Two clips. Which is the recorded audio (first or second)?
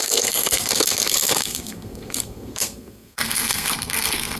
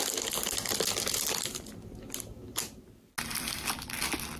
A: second